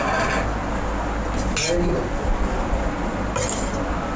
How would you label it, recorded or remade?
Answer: recorded